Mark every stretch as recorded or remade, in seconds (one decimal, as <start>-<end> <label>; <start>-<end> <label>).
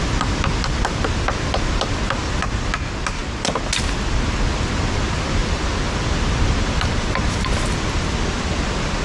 0.0-2.2 recorded; 2.2-2.7 remade; 2.7-5.4 recorded; 5.4-8.4 remade; 8.4-9.0 recorded